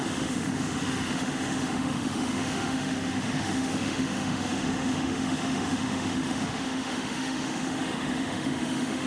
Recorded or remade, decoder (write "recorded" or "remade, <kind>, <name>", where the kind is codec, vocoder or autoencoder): remade, autoencoder, DAC-VAE